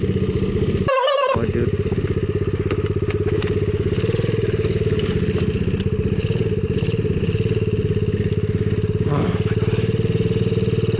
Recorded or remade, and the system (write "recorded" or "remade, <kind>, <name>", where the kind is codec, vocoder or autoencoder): recorded